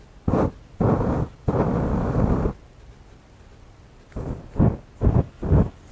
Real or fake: real